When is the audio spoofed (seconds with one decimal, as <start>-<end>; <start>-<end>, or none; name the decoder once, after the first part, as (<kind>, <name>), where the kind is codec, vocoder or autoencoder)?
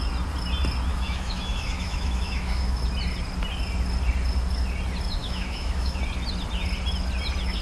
0.9-2.8 (autoencoder, DAC-VAE); 5.2-6.0